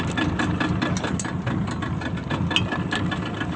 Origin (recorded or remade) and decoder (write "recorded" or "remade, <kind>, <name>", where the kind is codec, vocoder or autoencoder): recorded